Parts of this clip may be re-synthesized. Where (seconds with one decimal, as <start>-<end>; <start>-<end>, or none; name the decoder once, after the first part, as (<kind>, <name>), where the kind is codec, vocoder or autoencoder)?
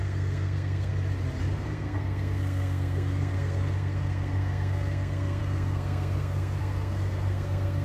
0.0-0.9 (codec, SNAC); 1.4-7.8